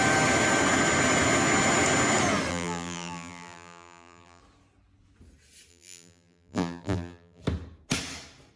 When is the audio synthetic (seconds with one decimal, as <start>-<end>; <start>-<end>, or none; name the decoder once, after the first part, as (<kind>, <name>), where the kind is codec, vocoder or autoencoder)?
2.5-4.4 (vocoder, BigVGAN v2); 5.7-7.4